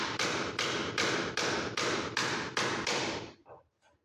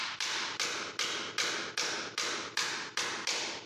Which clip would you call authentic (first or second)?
second